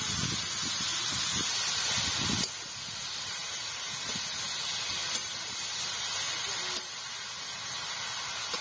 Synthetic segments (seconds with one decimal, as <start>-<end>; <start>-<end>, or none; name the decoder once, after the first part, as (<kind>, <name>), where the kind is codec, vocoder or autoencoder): none